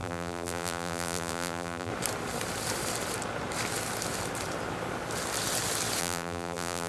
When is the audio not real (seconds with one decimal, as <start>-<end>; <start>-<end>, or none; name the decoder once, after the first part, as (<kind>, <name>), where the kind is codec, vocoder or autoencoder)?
0.0-1.9 (vocoder, BigVGAN v2); 6.0-6.9